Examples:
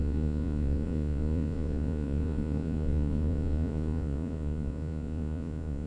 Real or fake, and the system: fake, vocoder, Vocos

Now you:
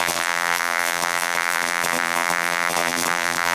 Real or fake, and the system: fake, vocoder, BigVGAN v2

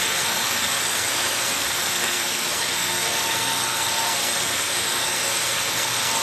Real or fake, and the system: fake, codec, SNAC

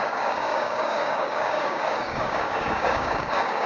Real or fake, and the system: fake, codec, DAC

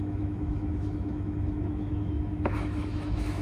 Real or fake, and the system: fake, autoencoder, DAC-VAE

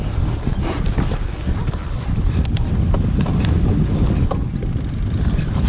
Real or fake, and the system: real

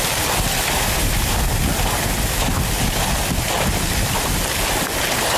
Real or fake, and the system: real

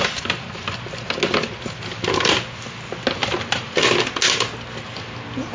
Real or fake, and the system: real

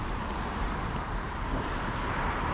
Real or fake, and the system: fake, vocoder, BigVGAN v2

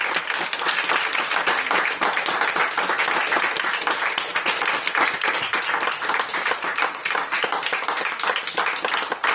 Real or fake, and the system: real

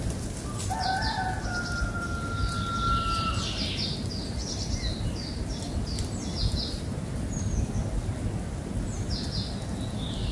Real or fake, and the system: real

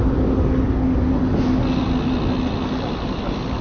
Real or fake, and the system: real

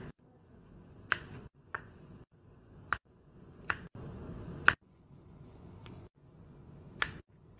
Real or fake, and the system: fake, vocoder, Vocos